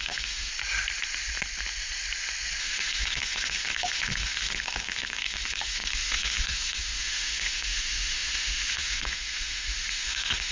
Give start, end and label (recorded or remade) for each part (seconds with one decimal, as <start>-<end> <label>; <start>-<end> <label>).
0.0-0.5 remade; 0.5-2.6 recorded; 2.6-10.5 remade